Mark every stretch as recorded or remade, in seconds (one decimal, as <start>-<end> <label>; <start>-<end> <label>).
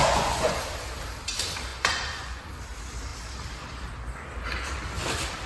0.0-0.6 remade; 0.6-1.7 recorded; 1.7-2.4 remade; 2.4-5.5 recorded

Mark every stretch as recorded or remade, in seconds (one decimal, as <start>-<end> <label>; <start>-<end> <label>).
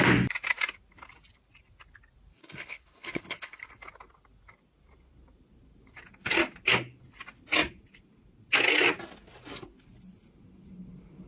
0.0-2.4 recorded; 2.4-3.7 remade; 3.7-11.3 recorded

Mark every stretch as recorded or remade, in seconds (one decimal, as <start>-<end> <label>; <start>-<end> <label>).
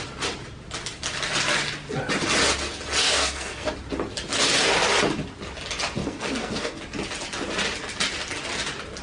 0.0-3.0 recorded; 3.0-3.7 remade; 3.7-6.0 recorded; 6.0-6.8 remade; 6.8-9.0 recorded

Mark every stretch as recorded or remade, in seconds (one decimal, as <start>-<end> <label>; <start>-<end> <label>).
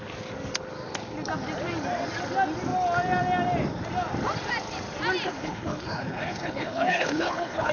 0.0-5.3 recorded; 5.3-7.7 remade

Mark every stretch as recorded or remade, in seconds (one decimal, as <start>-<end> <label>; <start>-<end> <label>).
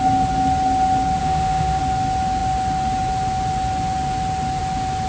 0.0-1.2 recorded; 1.2-1.8 remade; 1.8-5.1 recorded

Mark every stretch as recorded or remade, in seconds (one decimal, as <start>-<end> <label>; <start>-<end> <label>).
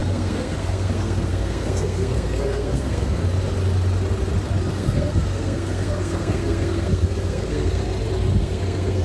0.0-3.2 remade; 3.2-4.7 recorded; 4.7-7.8 remade; 7.8-8.4 recorded; 8.4-9.0 remade